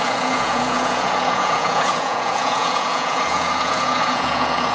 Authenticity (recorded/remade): remade